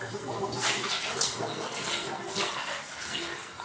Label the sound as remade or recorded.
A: remade